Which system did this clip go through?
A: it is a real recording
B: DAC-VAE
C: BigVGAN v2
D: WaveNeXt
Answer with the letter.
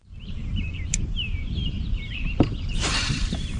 C